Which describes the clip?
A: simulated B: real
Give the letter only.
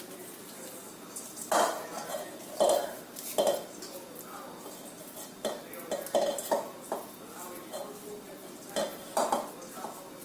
B